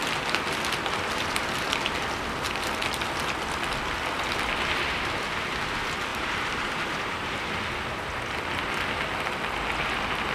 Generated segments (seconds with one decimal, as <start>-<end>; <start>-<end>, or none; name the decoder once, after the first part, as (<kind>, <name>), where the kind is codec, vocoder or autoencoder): 6.1-7.4 (vocoder, BigVGAN v2)